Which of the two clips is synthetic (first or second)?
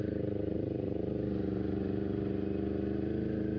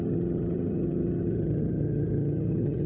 second